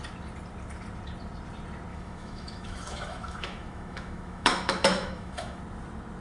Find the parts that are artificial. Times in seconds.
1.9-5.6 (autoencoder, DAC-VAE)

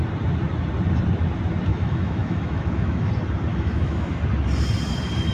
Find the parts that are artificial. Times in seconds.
1.7-3.1 (autoencoder, DAC-VAE); 3.5-4.2

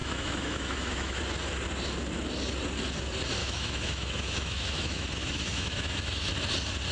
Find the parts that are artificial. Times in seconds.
0.0-1.2 (autoencoder, DAC-VAE); 3.4-6.3

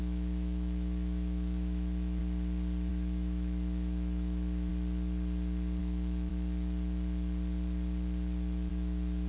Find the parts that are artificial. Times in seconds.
0.0-2.2 (autoencoder, DAC-VAE); 2.9-4.7; 5.8-6.3; 8.7-9.3